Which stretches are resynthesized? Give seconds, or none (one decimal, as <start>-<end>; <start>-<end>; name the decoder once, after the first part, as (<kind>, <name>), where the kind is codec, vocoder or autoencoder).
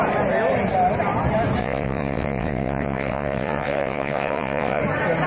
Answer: 1.6-4.8 (vocoder, WaveNeXt)